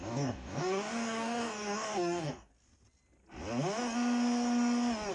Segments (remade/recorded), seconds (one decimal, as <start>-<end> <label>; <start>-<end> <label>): 0.0-2.5 remade; 2.5-5.1 recorded